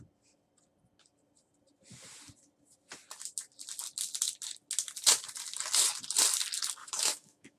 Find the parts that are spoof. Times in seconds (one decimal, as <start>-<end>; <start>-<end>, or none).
6.8-7.6